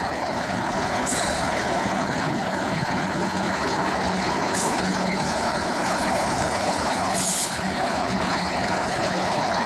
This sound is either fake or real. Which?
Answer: fake